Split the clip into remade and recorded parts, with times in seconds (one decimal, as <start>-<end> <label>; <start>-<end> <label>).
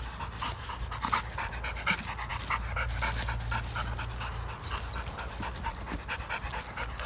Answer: 0.0-7.1 recorded